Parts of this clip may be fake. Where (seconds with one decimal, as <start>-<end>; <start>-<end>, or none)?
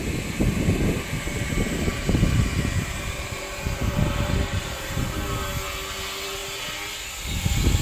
1.9-5.0